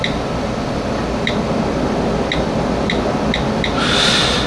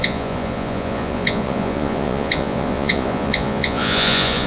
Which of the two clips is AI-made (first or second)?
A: second